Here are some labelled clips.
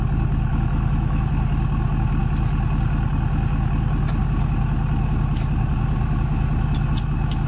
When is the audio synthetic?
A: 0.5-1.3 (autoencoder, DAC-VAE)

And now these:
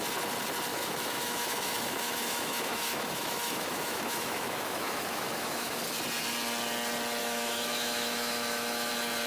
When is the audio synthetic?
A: 0.7-5.8 (autoencoder, DAC-VAE); 7.2-8.9

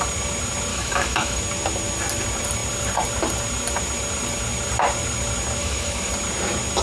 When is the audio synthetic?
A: 0.7-1.4 (autoencoder, DAC-VAE); 5.6-6.1

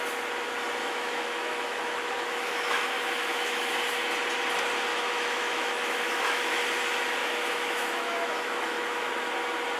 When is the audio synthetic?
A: 0.8-3.7 (autoencoder, DAC-VAE); 4.9-6.6; 7.2-9.1

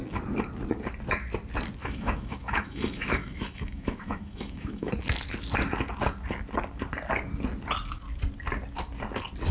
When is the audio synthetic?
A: 1.8-4.9 (autoencoder, DAC-VAE)

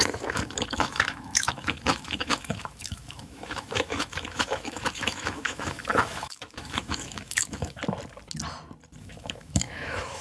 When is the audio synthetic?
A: 0.0-7.8 (autoencoder, DAC-VAE); 9.0-10.2

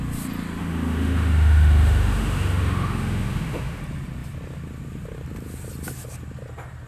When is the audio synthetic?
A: 0.6-3.8 (autoencoder, DAC-VAE)